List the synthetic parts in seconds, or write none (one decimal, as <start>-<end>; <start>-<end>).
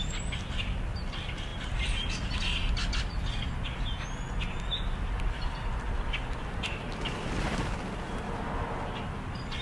none